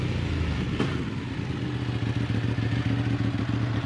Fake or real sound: real